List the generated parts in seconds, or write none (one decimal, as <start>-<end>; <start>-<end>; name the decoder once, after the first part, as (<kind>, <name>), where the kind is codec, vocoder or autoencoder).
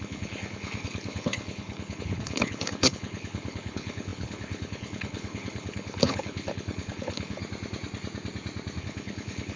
0.0-7.4 (codec, HILCodec); 8.8-9.6